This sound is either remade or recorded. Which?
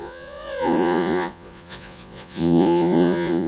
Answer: remade